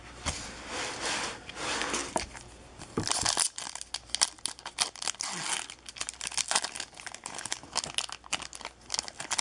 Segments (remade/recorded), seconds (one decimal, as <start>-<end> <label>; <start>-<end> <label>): 0.0-9.4 recorded